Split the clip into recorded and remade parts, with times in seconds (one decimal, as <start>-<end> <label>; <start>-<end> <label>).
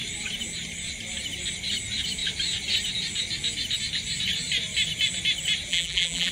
0.0-5.7 recorded; 5.7-6.3 remade